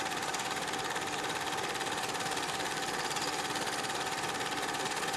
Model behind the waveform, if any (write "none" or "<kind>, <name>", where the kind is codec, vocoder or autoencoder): vocoder, BigVGAN v2